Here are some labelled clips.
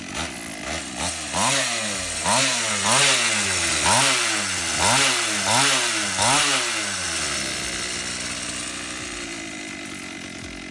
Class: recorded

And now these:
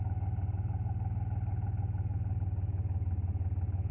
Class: recorded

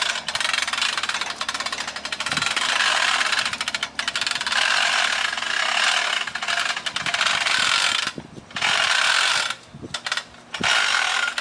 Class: recorded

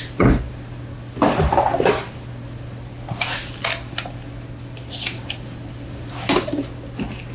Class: recorded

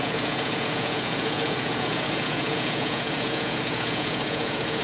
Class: remade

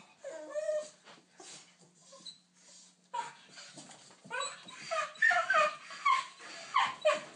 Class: recorded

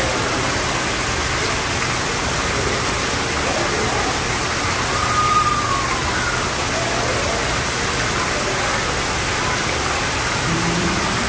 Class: recorded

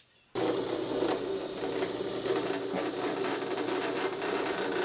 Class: recorded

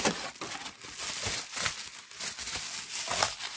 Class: recorded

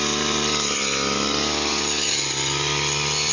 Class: recorded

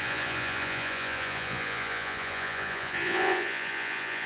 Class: remade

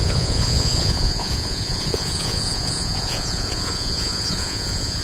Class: remade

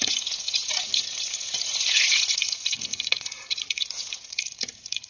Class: remade